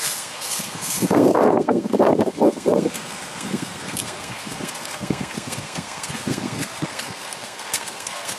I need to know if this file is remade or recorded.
remade